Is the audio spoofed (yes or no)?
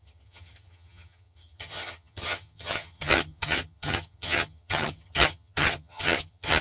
yes